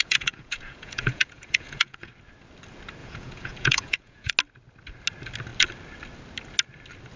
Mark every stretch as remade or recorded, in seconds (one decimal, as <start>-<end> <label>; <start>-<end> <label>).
0.0-2.1 remade; 2.1-3.0 recorded; 3.0-4.3 remade; 4.3-7.2 recorded